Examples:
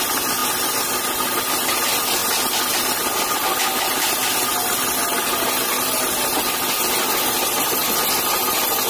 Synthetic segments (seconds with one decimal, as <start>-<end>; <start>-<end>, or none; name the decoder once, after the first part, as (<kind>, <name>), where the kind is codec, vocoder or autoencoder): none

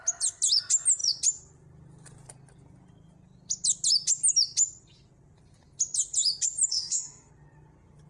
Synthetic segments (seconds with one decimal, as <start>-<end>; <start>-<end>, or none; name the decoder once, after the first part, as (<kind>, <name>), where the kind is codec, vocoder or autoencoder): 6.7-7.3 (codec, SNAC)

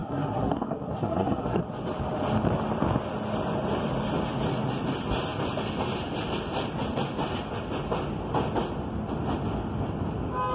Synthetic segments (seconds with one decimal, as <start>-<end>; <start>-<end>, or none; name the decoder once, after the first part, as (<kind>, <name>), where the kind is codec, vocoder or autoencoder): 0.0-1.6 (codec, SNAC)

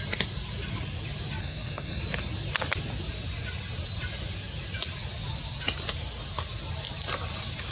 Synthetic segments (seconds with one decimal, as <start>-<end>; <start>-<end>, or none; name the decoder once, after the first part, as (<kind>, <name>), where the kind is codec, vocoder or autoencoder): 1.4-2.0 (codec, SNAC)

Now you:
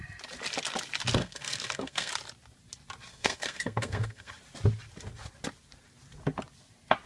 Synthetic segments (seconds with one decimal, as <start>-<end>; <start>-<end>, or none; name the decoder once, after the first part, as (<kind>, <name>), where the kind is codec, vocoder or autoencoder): 1.2-2.1 (codec, SNAC); 3.1-4.3